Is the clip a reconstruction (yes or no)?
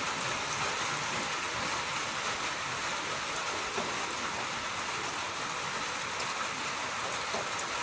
no